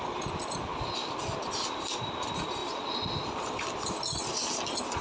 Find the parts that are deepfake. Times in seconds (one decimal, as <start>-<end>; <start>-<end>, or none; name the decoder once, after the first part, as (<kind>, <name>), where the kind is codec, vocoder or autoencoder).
none